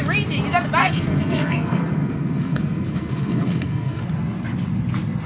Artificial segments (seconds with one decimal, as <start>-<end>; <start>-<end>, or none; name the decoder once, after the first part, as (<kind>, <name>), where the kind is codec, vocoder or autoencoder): 0.8-4.0 (codec, SNAC)